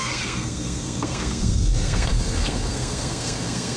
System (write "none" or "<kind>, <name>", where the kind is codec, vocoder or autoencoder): codec, SNAC